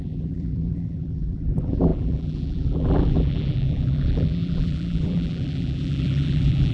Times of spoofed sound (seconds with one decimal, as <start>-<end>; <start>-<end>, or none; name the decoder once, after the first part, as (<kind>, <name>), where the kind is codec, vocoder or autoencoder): 0.0-6.7 (vocoder, BigVGAN v2)